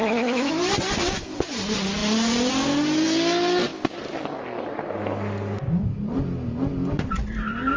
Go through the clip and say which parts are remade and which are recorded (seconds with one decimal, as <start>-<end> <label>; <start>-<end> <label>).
0.0-0.5 remade; 0.5-7.8 recorded